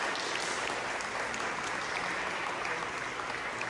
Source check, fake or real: real